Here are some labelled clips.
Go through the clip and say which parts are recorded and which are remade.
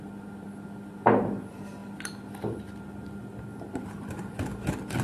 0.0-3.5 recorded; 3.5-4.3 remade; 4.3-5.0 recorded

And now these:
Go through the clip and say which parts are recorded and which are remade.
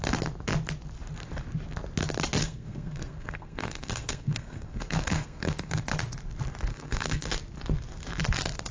0.0-2.4 recorded; 2.4-5.8 remade; 5.8-6.7 recorded; 6.7-7.3 remade; 7.3-8.7 recorded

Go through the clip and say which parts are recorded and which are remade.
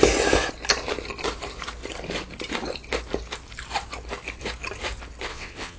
0.0-5.3 recorded; 5.3-5.8 remade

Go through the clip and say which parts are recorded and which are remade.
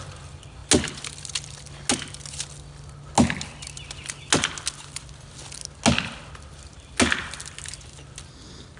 0.0-8.8 recorded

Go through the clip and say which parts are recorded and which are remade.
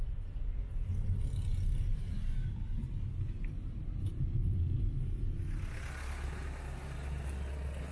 0.0-7.9 recorded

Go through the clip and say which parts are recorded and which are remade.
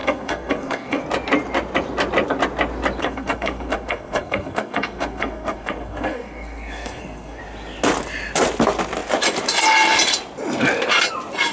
0.0-1.0 remade; 1.0-3.0 recorded; 3.0-7.4 remade; 7.4-11.5 recorded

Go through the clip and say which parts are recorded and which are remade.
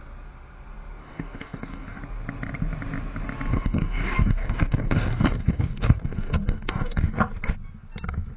0.0-1.0 recorded; 1.0-2.0 remade; 2.0-3.5 recorded; 3.5-7.2 remade; 7.2-8.4 recorded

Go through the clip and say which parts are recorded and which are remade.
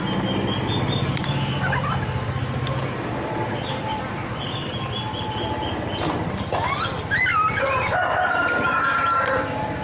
0.0-1.2 recorded; 1.2-4.7 remade; 4.7-9.8 recorded